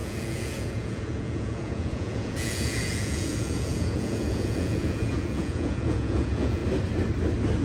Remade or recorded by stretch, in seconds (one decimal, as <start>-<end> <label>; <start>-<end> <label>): 0.0-6.6 remade; 6.6-7.6 recorded